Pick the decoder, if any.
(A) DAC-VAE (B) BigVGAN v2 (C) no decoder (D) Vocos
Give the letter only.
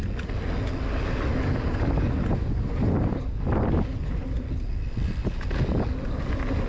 C